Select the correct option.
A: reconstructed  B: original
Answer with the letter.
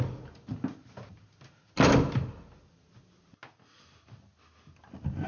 B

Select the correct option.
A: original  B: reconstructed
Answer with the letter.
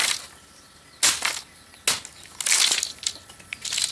A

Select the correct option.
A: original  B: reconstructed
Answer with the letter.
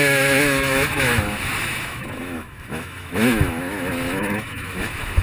B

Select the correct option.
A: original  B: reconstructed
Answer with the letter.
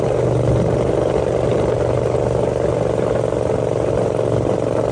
A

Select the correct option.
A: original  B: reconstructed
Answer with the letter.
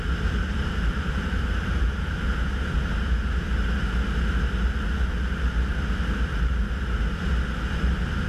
A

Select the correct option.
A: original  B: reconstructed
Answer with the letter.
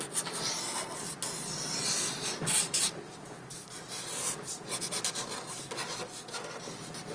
A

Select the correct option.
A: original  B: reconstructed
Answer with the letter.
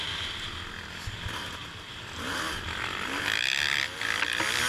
A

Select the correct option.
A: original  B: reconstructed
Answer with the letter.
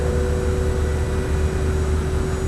A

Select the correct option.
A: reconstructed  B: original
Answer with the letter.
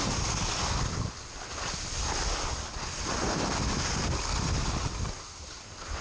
B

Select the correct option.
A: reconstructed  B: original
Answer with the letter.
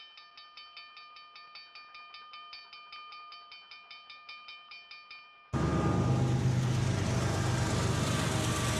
B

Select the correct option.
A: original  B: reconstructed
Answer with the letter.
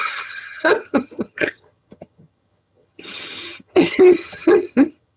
B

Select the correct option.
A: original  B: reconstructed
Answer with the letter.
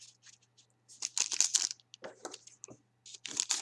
A